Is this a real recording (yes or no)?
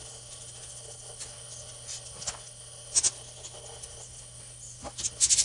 yes